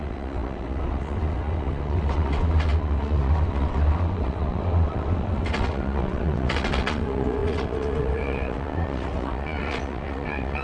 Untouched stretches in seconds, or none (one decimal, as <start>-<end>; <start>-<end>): none